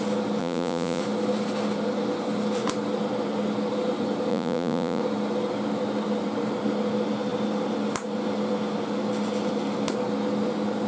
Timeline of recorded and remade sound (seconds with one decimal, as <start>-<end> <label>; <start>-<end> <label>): 0.0-0.4 recorded; 0.4-1.0 remade; 1.0-4.3 recorded; 4.3-5.0 remade; 5.0-10.9 recorded